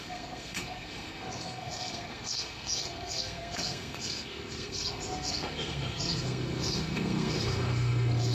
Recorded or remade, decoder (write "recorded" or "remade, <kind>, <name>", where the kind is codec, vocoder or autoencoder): remade, codec, SNAC